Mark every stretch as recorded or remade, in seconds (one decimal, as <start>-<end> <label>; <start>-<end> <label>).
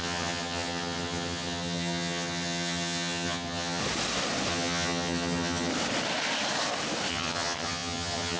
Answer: 0.0-3.8 remade; 3.8-4.5 recorded; 4.5-5.7 remade; 5.7-7.1 recorded; 7.1-8.4 remade